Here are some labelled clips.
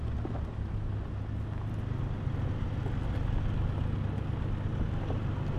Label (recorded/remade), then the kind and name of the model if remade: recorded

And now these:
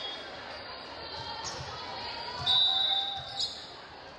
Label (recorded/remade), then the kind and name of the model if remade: recorded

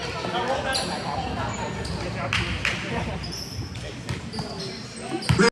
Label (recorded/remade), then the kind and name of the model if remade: recorded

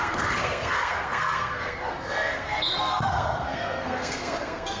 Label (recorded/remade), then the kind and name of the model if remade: remade, codec, SNAC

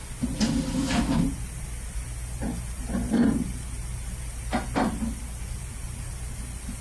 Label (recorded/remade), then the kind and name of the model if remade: recorded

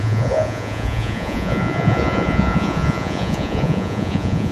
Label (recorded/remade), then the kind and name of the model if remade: remade, vocoder, Vocos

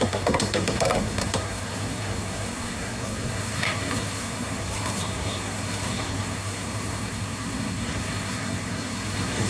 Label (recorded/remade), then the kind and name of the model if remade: remade, codec, SNAC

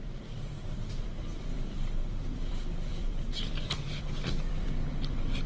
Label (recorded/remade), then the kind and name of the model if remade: remade, vocoder, BigVGAN v2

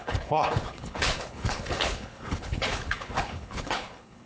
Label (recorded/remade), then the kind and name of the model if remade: remade, codec, HILCodec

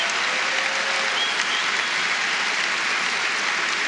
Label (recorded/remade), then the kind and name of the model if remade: recorded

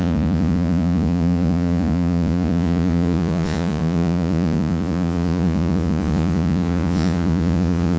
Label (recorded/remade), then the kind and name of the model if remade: remade, vocoder, Vocos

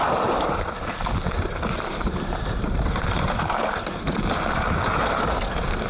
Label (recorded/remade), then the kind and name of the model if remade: remade, vocoder, BigVGAN v2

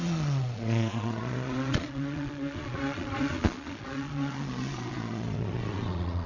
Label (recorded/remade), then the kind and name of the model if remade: remade, vocoder, Vocos